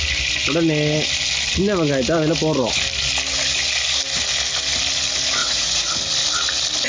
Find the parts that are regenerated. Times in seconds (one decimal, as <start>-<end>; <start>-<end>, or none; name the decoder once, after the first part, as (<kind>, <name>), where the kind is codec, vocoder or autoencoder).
5.4-5.9 (vocoder, Vocos)